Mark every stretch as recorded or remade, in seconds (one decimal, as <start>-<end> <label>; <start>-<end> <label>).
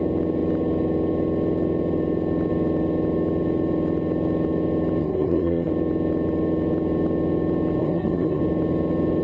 0.0-5.0 recorded; 5.0-5.7 remade; 5.7-7.8 recorded; 7.8-8.4 remade; 8.4-9.2 recorded